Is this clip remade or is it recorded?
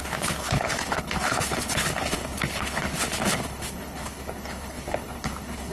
remade